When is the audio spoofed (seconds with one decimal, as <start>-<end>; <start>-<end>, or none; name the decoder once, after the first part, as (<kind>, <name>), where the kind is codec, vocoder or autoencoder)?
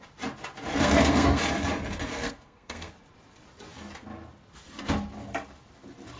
0.7-1.4 (codec, SNAC); 2.1-2.9